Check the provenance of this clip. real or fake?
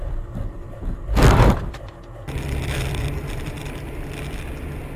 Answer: real